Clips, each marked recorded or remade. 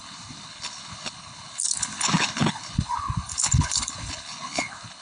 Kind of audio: remade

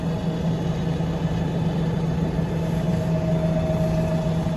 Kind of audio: recorded